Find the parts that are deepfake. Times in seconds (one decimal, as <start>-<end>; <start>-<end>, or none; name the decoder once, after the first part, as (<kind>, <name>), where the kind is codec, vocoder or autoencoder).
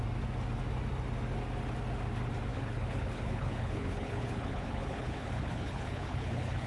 2.5-6.7 (codec, HILCodec)